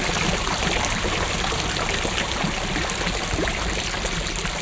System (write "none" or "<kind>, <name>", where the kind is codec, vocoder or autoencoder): none